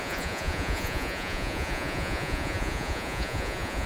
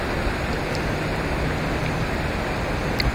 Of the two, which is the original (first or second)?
second